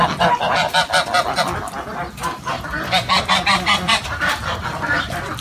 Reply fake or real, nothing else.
real